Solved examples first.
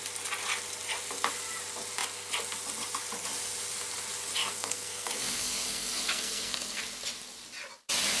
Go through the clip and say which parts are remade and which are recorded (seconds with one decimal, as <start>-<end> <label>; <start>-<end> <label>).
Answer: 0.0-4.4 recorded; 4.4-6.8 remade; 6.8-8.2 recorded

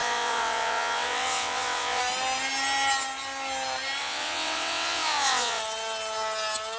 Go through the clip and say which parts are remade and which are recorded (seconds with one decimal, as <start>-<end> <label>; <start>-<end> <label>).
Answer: 0.0-2.0 remade; 2.0-4.0 recorded; 4.0-5.6 remade; 5.6-6.8 recorded

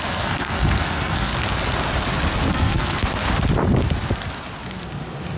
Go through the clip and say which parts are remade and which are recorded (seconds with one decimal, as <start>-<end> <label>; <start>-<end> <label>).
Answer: 0.0-1.3 remade; 1.3-2.5 recorded; 2.5-3.0 remade; 3.0-5.4 recorded